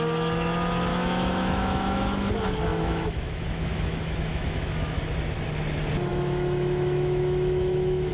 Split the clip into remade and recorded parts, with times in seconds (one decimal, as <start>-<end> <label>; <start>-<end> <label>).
0.0-0.9 recorded; 0.9-2.3 remade; 2.3-2.7 recorded; 2.7-5.0 remade; 5.0-6.1 recorded; 6.1-8.1 remade